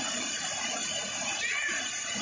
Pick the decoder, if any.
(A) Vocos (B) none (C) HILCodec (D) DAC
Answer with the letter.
B